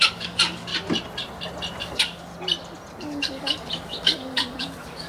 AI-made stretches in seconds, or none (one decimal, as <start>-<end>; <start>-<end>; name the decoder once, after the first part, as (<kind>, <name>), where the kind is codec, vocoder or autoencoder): 0.0-0.7 (codec, DAC); 1.8-2.3; 3.0-5.1